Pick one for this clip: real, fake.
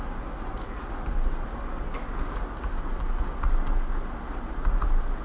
real